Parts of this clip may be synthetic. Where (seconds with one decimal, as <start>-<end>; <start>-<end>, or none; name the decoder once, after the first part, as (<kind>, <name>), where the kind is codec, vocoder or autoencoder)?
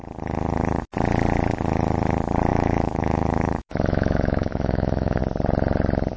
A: 2.5-5.2 (autoencoder, DAC-VAE)